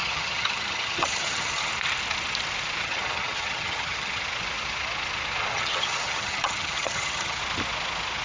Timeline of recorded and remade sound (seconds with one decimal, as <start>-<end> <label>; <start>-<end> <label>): 0.0-1.7 remade; 1.7-2.8 recorded; 2.8-4.2 remade; 4.2-5.5 recorded; 5.5-7.4 remade; 7.4-8.2 recorded